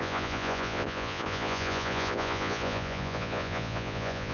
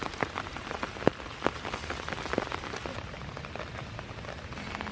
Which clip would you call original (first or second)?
second